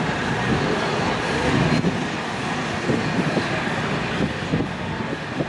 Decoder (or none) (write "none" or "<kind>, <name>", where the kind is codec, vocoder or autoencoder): vocoder, BigVGAN v2